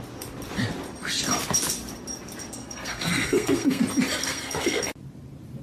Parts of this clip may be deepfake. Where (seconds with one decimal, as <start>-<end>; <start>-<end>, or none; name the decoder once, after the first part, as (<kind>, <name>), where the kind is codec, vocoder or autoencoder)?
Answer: 2.6-3.8 (codec, SNAC); 4.2-4.9